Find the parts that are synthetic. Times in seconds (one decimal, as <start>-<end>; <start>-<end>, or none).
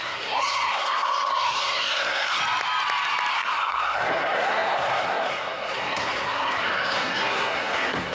0.0-2.4; 3.3-8.1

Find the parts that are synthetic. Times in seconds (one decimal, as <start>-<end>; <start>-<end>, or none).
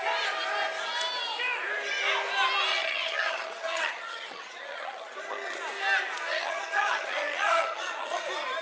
2.7-5.6; 6.3-8.2